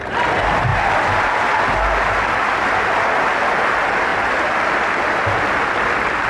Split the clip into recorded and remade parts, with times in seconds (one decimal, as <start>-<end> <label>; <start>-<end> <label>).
0.0-6.3 recorded